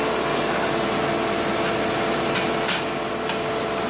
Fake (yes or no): no